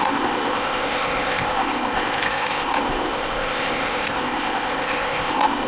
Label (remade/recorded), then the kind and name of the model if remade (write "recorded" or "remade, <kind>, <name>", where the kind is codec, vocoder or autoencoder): remade, codec, ZipCodec